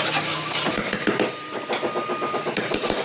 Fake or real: real